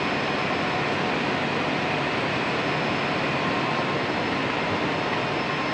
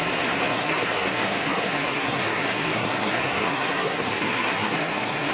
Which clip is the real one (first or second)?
first